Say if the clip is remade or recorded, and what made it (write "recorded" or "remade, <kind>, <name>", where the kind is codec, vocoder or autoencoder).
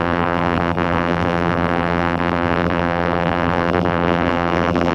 remade, vocoder, BigVGAN v2